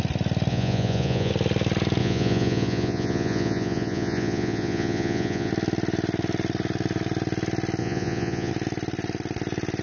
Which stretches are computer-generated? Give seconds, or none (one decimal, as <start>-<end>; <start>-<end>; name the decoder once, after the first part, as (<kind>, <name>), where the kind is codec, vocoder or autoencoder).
0.5-1.3 (vocoder, Vocos); 2.0-5.5; 7.8-8.5